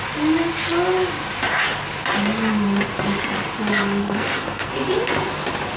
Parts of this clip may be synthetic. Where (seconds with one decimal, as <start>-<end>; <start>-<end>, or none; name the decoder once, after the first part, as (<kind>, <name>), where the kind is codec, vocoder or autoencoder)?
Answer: 4.0-4.7 (codec, SNAC)